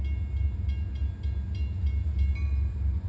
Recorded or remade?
recorded